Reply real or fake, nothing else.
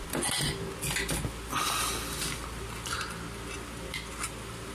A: real